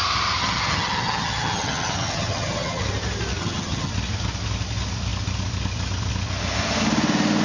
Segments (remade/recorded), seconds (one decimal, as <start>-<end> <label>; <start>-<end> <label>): 0.0-0.4 recorded; 0.4-2.8 remade; 2.8-3.4 recorded; 3.4-3.9 remade; 3.9-7.4 recorded